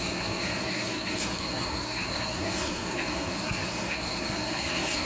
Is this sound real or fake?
fake